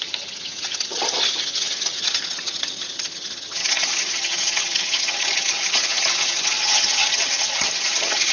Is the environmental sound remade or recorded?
remade